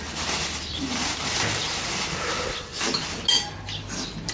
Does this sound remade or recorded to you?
recorded